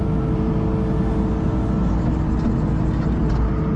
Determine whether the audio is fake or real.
real